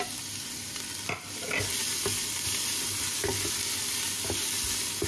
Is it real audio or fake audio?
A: real